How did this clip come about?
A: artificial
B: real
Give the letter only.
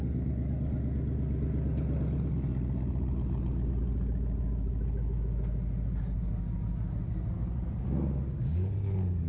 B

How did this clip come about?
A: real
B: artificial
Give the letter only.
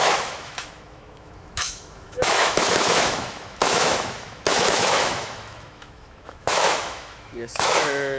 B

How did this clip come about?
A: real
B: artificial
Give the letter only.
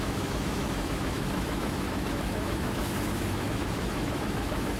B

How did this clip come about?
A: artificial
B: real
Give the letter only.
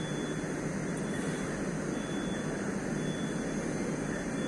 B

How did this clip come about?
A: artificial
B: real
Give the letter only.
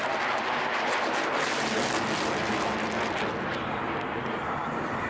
B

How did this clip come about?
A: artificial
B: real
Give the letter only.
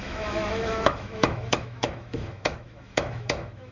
A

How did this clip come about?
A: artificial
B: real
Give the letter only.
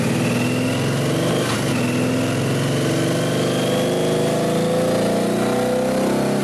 B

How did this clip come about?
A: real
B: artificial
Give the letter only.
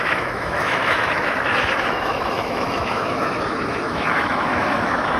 B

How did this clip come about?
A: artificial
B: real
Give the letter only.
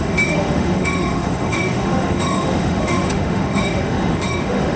A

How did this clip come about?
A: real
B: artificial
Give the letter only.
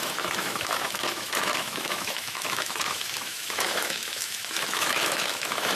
B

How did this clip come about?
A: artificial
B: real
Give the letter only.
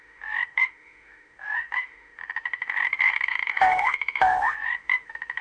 A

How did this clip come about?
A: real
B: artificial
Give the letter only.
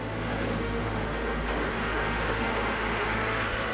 B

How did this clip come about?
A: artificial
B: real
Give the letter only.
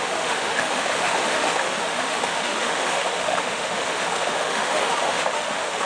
A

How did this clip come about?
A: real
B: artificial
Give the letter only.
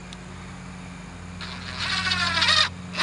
A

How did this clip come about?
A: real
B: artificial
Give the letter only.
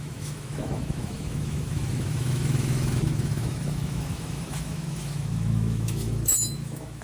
B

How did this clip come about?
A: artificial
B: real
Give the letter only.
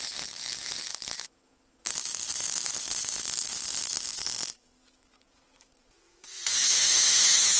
A